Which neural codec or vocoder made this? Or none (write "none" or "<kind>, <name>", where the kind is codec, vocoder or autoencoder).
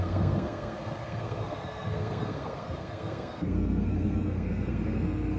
codec, SNAC